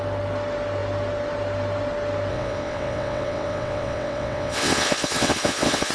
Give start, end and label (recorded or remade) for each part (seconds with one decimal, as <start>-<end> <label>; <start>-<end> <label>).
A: 0.0-2.3 recorded; 2.3-5.9 remade